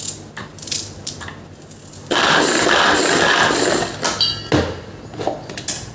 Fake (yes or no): no